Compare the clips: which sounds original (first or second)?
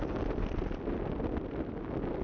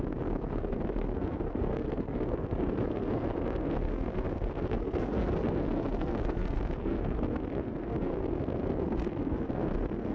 first